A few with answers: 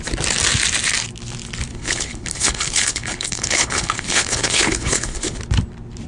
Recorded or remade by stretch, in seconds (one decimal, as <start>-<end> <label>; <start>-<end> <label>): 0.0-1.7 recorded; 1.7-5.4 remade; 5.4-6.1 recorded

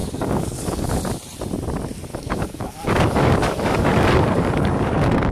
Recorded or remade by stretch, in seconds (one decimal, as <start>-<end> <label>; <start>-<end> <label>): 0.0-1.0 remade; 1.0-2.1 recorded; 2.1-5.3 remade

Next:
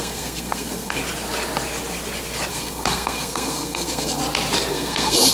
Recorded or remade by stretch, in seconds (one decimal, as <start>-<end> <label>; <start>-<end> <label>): 0.0-1.0 remade; 1.0-2.5 recorded; 2.5-4.2 remade; 4.2-4.7 recorded; 4.7-5.3 remade

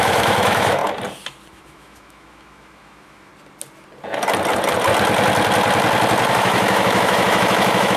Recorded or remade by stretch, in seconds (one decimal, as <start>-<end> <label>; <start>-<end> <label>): 0.0-0.8 remade; 0.8-1.5 recorded; 1.5-3.3 remade; 3.3-6.3 recorded; 6.3-8.0 remade